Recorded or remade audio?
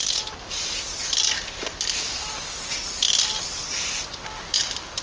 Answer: recorded